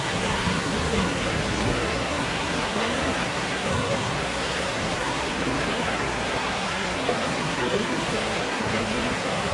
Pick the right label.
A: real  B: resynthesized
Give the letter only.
B